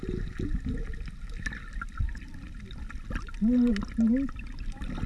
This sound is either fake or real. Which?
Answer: real